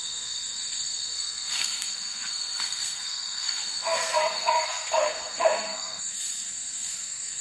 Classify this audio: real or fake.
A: fake